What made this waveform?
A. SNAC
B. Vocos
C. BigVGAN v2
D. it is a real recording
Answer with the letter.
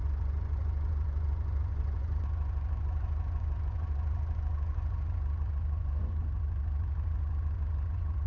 B